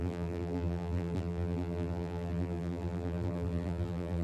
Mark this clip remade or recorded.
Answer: remade